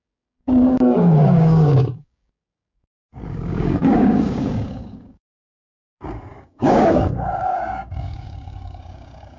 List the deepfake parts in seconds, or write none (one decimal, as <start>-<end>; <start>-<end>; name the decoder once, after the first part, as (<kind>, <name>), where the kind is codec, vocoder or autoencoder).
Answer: 0.0-9.4 (codec, DAC)